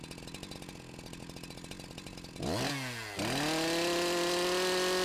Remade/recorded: recorded